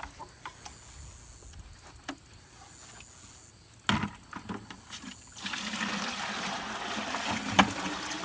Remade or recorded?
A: recorded